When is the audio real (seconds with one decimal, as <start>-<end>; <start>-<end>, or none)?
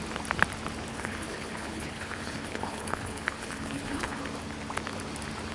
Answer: 0.0-0.9; 4.2-5.5